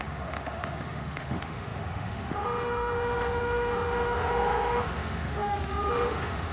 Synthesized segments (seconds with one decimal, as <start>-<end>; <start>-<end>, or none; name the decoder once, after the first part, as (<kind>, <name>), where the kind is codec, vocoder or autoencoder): 0.0-6.5 (autoencoder, DAC-VAE)